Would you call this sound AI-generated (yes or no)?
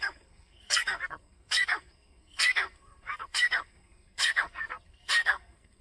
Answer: yes